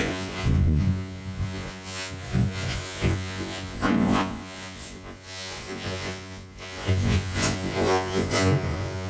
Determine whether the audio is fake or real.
fake